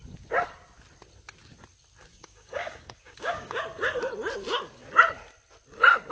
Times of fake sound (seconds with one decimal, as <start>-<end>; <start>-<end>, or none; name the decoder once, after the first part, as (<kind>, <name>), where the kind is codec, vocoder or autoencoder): 2.1-3.6 (codec, DAC)